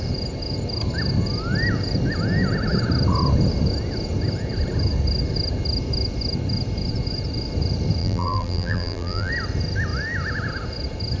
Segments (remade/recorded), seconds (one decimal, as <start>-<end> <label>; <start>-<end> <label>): 0.0-8.0 recorded; 8.0-9.3 remade; 9.3-11.2 recorded